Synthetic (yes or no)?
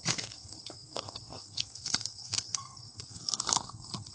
yes